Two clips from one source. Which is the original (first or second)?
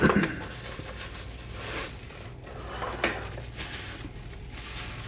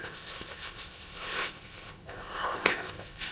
first